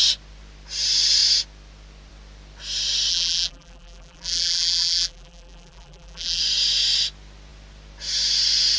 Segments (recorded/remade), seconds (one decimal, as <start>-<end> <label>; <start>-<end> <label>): 0.0-3.1 recorded; 3.1-6.4 remade; 6.4-8.8 recorded